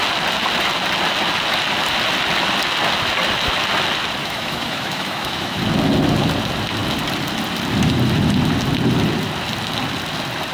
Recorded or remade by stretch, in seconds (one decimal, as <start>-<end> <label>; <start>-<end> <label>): 0.0-4.2 recorded; 4.2-5.6 remade; 5.6-10.5 recorded